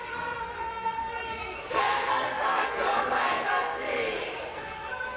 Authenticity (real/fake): fake